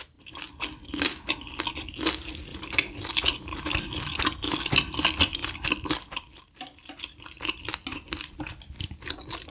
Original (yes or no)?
yes